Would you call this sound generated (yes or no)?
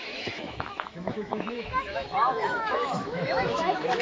yes